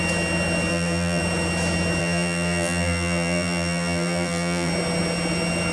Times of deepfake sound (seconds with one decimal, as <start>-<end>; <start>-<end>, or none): 0.7-1.2; 2.0-4.7